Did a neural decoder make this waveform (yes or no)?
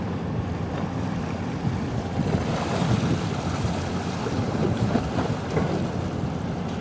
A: yes